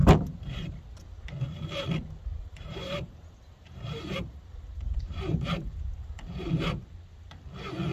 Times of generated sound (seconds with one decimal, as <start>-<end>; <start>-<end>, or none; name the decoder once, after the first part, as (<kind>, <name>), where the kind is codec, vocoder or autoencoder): 0.0-0.7 (vocoder, BigVGAN v2); 2.3-6.8